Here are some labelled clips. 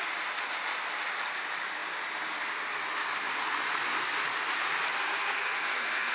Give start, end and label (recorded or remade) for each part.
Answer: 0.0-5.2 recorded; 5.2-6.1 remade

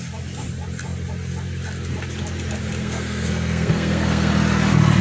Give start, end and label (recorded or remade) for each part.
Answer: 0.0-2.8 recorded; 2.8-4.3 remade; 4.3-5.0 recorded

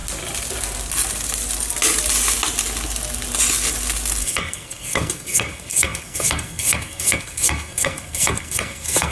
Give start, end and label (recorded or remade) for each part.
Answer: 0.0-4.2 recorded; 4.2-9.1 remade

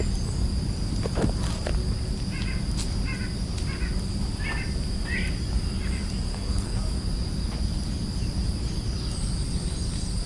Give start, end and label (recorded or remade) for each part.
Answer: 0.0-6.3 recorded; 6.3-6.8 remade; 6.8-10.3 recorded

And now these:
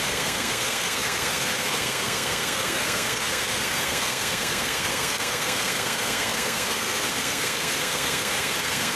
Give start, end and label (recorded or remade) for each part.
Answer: 0.0-9.0 remade